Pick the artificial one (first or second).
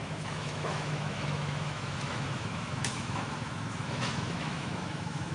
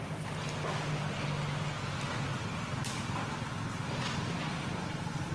first